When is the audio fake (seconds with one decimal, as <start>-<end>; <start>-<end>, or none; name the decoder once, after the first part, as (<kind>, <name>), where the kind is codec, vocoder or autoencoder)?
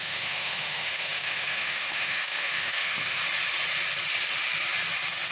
0.0-3.2 (autoencoder, DAC-VAE)